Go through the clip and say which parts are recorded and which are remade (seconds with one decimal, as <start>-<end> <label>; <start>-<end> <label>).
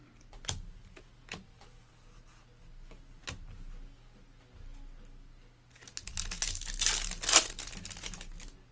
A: 0.0-8.7 recorded